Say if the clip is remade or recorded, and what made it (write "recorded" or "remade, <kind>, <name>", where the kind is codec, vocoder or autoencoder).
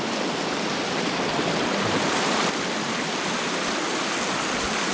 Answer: recorded